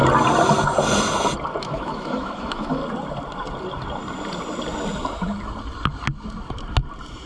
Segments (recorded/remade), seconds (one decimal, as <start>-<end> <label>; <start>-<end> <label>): 0.0-1.6 recorded; 1.6-2.8 remade; 2.8-7.3 recorded